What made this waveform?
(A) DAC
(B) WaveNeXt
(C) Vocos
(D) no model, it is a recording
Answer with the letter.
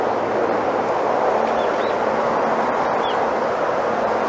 D